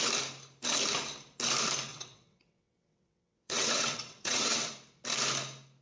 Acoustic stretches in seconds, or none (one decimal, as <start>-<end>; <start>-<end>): 0.0-1.9; 4.7-5.8